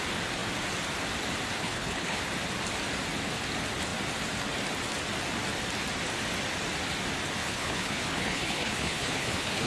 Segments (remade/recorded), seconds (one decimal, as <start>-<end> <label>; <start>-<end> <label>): 0.0-1.6 recorded; 1.6-2.2 remade; 2.2-7.4 recorded; 7.4-9.7 remade